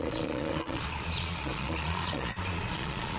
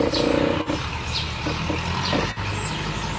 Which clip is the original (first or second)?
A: second